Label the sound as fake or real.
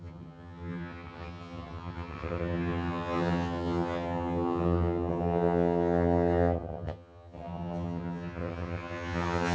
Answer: fake